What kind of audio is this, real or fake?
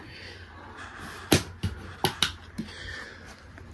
real